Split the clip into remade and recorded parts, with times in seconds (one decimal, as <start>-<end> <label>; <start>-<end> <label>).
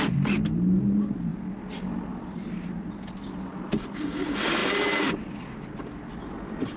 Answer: 0.0-6.8 recorded